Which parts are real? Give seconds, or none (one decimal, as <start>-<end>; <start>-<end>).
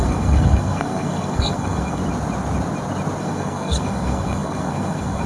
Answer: 2.0-3.2